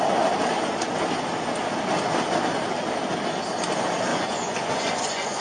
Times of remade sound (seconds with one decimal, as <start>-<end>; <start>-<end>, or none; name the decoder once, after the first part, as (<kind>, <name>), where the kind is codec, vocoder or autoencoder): 4.1-5.4 (vocoder, Vocos)